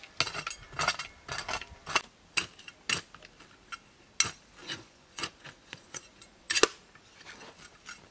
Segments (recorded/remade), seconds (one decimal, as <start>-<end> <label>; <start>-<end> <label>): 0.0-4.6 recorded; 4.6-6.6 remade; 6.6-8.1 recorded